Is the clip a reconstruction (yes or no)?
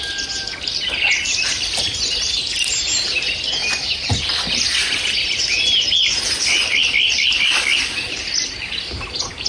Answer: no